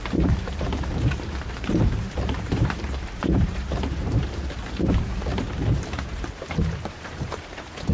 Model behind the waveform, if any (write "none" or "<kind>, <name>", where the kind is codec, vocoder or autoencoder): vocoder, BigVGAN v2